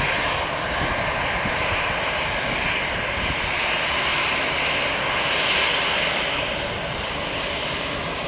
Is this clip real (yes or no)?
yes